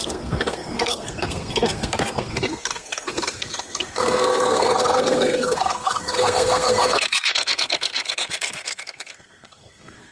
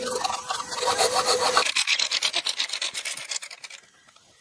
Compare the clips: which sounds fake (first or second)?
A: first